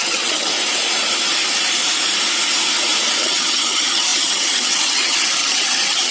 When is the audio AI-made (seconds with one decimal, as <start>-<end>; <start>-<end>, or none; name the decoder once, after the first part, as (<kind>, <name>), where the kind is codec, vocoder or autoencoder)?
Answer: 0.0-0.5 (vocoder, HiFi-GAN); 3.2-6.1